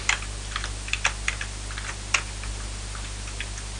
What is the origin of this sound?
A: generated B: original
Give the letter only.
B